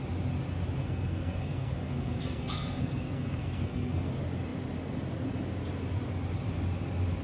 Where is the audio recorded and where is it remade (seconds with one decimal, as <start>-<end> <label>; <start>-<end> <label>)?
0.0-0.8 recorded; 0.8-4.1 remade; 4.1-7.2 recorded